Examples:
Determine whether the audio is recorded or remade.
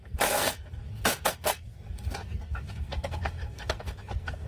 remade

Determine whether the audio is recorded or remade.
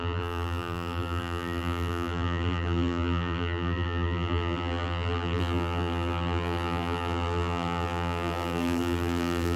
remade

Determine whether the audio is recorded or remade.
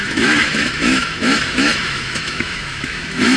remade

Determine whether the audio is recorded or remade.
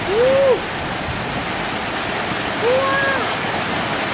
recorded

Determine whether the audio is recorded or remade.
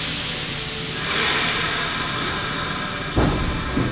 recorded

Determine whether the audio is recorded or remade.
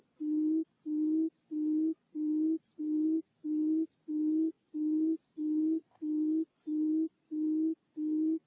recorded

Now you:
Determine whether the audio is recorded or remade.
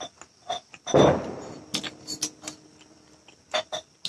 recorded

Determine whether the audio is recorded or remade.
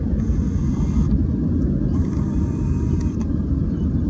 recorded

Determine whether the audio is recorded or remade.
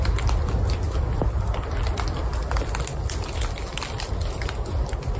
recorded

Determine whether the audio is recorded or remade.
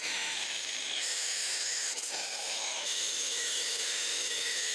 remade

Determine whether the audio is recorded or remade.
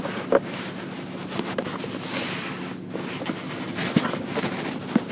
recorded